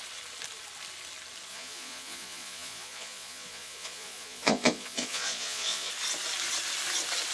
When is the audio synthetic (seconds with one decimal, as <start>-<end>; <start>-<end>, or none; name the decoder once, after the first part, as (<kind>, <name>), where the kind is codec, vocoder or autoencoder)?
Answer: 1.5-5.9 (vocoder, Vocos)